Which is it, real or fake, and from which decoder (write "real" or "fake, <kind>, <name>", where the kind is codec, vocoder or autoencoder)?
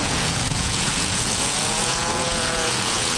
fake, vocoder, Vocos